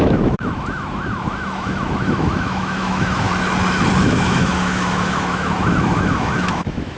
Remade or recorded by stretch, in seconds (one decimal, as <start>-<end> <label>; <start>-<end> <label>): 0.0-3.3 remade; 3.3-4.0 recorded; 4.0-7.0 remade